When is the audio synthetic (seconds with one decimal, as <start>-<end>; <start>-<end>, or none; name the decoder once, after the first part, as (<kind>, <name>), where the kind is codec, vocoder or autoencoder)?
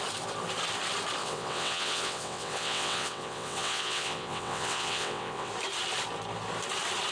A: 1.2-5.5 (vocoder, WaveNeXt)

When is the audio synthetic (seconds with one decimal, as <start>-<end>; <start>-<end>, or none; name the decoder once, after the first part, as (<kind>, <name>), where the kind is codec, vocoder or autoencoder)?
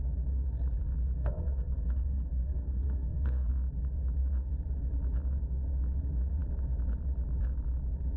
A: 1.2-3.5 (codec, SNAC)